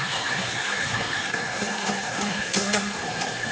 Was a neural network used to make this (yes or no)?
yes